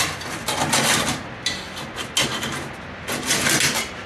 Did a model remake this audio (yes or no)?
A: no